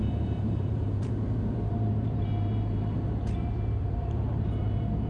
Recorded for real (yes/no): no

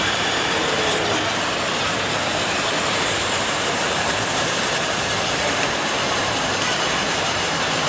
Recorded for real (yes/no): no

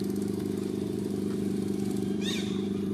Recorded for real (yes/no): no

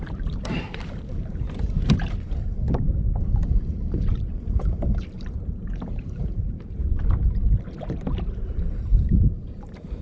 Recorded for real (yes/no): no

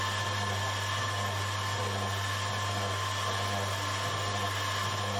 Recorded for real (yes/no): yes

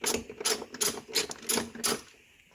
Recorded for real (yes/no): yes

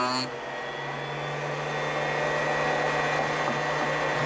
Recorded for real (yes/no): yes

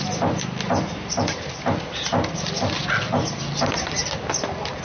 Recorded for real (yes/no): yes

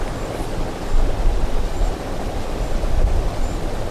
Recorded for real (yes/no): no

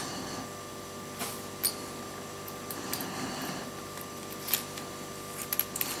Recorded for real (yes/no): yes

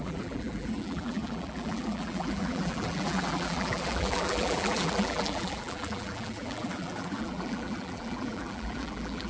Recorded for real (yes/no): no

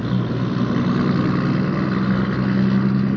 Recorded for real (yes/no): yes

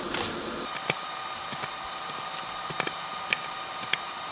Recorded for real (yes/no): no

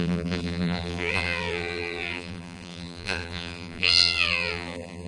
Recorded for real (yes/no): no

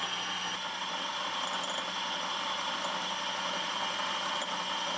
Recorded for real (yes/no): yes